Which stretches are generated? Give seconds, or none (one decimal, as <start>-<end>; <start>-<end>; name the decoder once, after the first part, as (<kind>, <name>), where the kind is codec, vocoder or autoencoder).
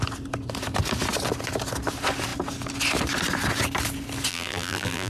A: 4.3-5.1 (vocoder, BigVGAN v2)